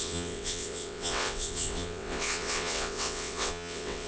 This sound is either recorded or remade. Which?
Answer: remade